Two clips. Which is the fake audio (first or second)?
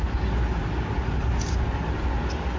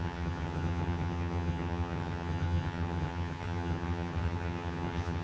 second